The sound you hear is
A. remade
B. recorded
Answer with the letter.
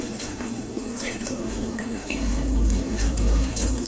A